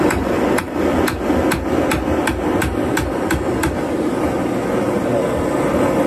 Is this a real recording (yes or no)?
yes